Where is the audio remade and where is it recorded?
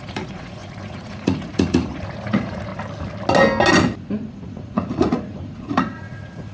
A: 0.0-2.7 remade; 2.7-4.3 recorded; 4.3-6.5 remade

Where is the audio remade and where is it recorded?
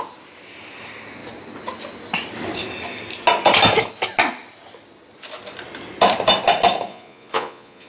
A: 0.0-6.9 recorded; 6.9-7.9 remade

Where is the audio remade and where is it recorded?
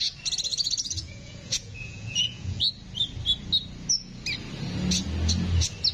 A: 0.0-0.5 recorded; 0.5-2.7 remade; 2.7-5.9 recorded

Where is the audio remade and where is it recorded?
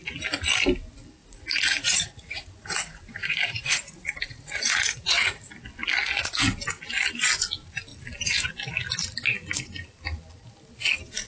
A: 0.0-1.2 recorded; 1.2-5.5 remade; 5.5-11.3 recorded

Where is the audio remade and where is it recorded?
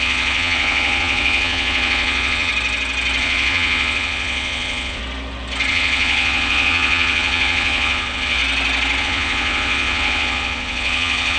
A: 0.0-2.5 remade; 2.5-3.2 recorded; 3.2-5.0 remade; 5.0-5.7 recorded; 5.7-8.4 remade; 8.4-9.0 recorded; 9.0-11.4 remade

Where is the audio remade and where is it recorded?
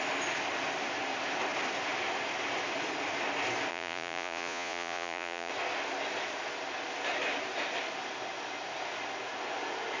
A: 0.0-3.7 recorded; 3.7-5.5 remade; 5.5-10.0 recorded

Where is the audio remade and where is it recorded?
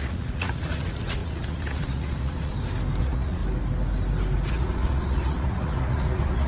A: 0.0-2.5 remade; 2.5-3.0 recorded; 3.0-3.4 remade; 3.4-4.5 recorded; 4.5-6.5 remade